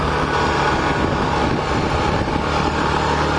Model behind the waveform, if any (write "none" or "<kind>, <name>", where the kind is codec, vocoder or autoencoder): none